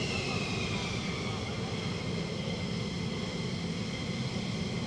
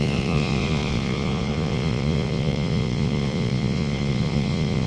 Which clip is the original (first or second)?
first